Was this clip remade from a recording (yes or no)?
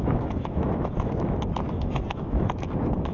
yes